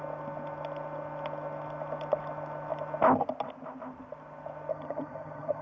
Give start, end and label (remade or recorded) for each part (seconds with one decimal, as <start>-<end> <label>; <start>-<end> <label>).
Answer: 0.0-4.7 recorded; 4.7-5.6 remade